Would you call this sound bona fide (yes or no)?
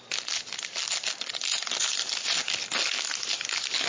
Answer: yes